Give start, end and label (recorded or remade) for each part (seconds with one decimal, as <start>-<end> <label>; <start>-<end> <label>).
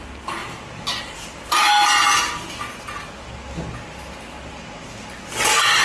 0.0-5.8 recorded